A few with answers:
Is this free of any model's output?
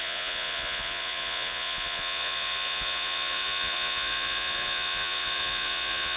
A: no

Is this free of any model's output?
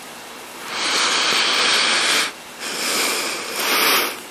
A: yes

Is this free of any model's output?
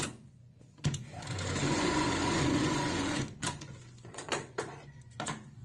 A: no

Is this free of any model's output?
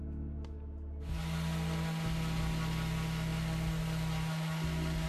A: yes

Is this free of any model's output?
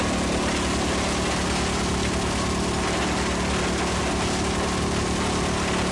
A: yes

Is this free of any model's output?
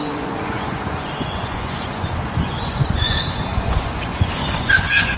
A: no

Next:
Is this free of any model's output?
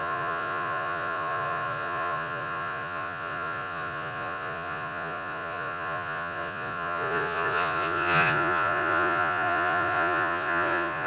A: no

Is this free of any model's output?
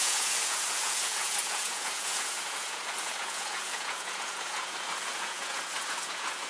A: no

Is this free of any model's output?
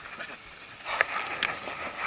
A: yes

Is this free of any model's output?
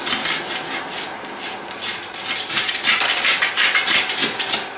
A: yes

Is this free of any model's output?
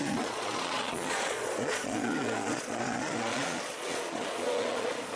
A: no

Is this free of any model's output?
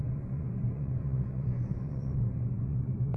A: no